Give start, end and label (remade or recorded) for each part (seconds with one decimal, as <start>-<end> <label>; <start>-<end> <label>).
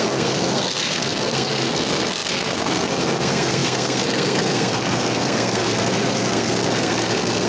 0.0-7.5 remade